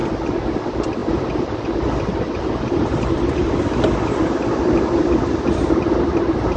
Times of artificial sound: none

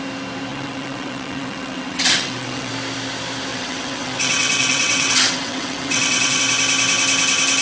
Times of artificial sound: 0.5-2.7; 3.5-6.4

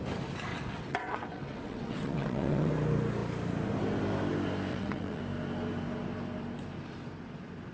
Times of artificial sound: 0.5-2.7; 4.7-5.2

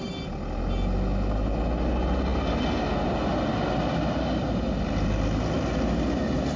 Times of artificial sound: none